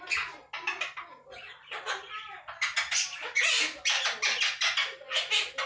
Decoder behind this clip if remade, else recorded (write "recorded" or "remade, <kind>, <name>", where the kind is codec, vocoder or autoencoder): recorded